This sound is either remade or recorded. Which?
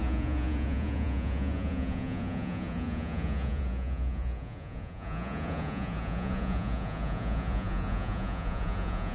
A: remade